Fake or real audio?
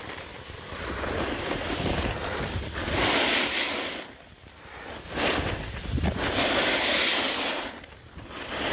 real